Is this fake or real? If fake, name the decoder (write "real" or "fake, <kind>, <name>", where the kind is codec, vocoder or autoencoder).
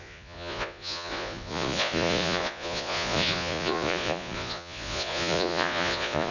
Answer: fake, vocoder, Vocos